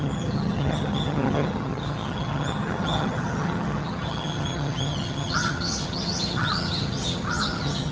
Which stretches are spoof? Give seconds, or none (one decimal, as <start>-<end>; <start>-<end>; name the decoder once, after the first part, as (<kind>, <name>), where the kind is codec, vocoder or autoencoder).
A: 0.0-7.9 (vocoder, HiFi-GAN)